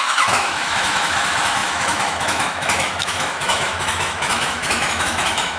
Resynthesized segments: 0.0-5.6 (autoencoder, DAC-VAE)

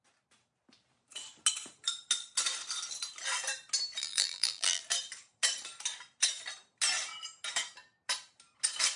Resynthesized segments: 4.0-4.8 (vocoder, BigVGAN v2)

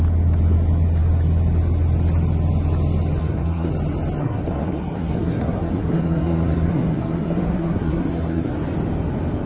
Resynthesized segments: 3.2-3.7 (codec, SNAC); 4.2-8.5

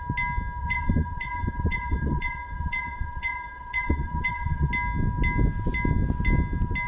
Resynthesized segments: 0.6-4.7 (vocoder, Vocos)

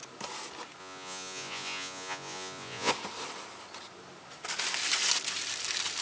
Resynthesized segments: 0.8-2.9 (vocoder, Vocos)

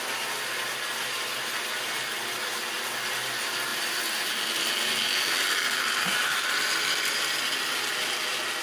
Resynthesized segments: 3.7-4.3 (vocoder, BigVGAN v2)